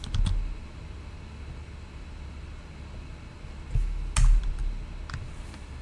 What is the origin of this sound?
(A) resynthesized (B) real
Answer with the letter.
B